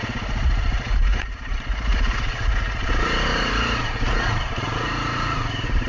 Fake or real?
fake